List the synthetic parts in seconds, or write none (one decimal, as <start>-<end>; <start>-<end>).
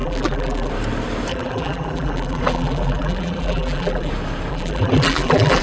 0.0-0.7; 1.3-4.1; 4.5-5.6